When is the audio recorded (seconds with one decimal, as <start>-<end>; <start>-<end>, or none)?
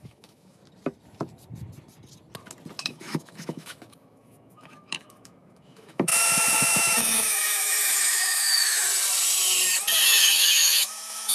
0.6-2.8; 8.9-10.0